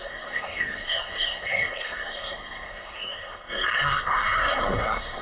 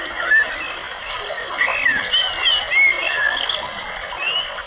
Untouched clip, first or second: second